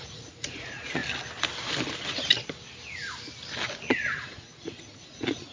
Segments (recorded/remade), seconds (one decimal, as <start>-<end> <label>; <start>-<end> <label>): 0.0-1.0 remade; 1.0-4.3 recorded; 4.3-5.5 remade